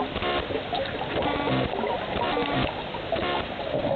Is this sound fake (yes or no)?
no